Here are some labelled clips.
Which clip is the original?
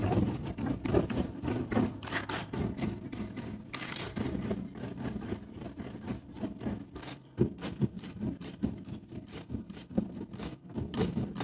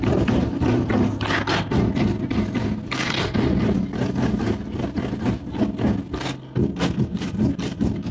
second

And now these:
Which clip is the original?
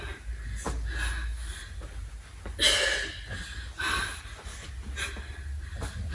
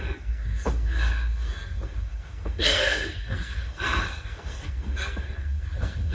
first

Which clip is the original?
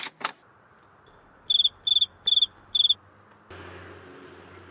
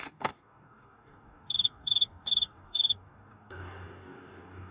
first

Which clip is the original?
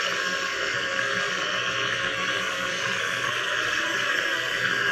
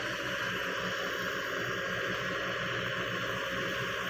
second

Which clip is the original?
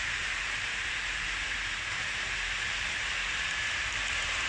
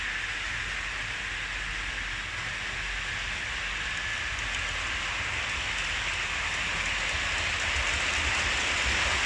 second